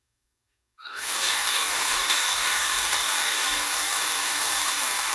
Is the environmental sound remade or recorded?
remade